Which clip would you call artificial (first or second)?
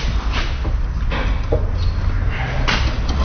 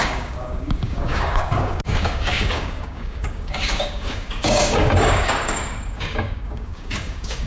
second